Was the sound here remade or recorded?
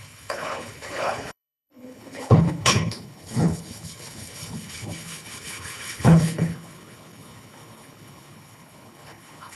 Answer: remade